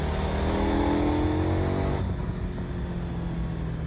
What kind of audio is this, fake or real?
real